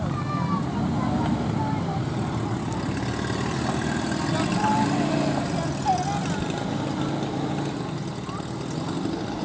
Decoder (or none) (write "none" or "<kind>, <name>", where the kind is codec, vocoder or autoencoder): none